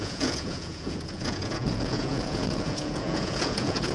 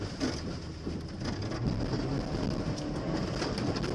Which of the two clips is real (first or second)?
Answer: second